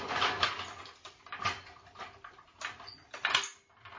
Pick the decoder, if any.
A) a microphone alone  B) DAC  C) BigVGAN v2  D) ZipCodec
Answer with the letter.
A